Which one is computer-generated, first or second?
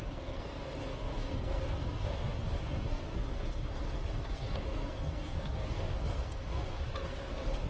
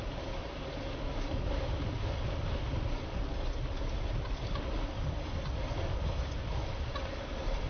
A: first